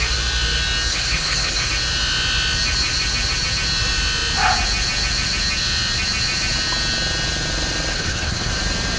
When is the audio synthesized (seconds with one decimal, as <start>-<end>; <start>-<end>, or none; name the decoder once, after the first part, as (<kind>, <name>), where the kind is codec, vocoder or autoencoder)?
0.9-1.7 (codec, HILCodec); 7.9-8.5